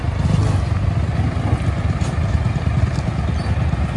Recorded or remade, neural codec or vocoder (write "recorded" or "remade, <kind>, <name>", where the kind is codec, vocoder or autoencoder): recorded